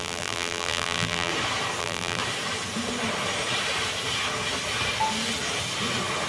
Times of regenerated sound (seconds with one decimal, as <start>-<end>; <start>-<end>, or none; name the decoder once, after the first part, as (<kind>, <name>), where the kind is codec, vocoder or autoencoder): 0.0-1.3 (vocoder, BigVGAN v2); 1.8-2.2